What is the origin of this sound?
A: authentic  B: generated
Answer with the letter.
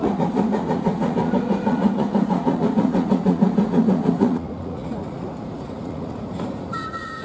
B